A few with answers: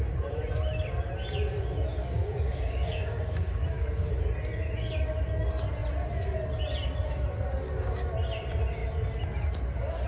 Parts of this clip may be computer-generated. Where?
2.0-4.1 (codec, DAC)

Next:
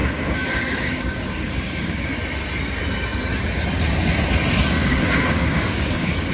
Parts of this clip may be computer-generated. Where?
0.0-2.1 (codec, DAC); 4.8-6.3

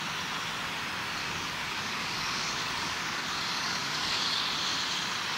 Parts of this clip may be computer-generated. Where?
1.2-4.4 (codec, DAC)

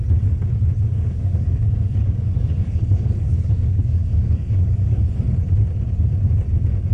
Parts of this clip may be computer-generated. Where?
0.9-5.0 (codec, DAC)

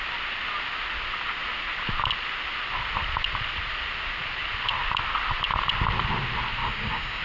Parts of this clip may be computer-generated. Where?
6.6-7.2 (codec, DAC)

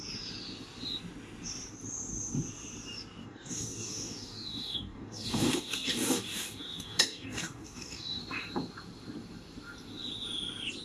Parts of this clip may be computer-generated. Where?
3.2-8.2 (codec, DAC)

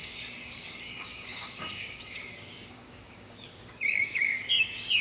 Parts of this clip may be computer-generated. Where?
0.0-5.0 (codec, DAC)